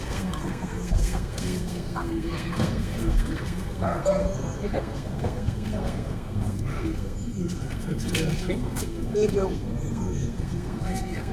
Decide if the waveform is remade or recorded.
remade